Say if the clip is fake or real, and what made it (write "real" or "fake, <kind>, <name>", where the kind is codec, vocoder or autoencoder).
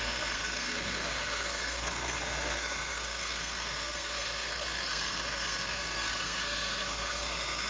fake, codec, SNAC